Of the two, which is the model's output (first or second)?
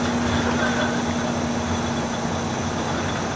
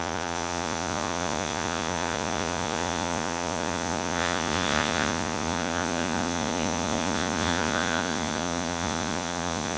second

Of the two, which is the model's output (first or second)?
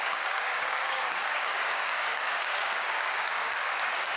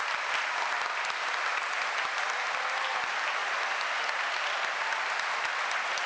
first